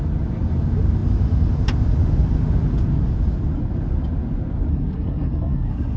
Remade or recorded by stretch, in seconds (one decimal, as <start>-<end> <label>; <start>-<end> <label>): 0.0-4.7 recorded; 4.7-6.0 remade